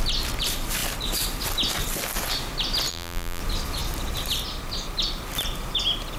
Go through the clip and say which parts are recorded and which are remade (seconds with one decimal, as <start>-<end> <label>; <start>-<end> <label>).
0.0-2.9 recorded; 2.9-3.4 remade; 3.4-6.2 recorded